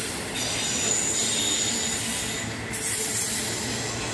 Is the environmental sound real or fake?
real